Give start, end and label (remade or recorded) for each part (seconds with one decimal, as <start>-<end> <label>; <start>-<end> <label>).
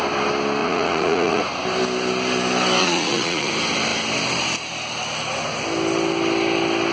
0.0-0.6 recorded; 0.6-1.4 remade; 1.4-2.8 recorded; 2.8-3.5 remade; 3.5-6.9 recorded